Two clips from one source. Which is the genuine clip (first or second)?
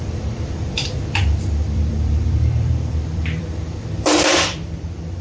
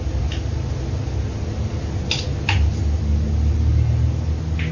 second